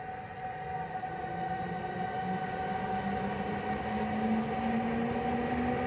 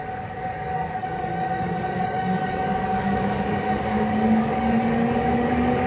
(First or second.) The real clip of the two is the first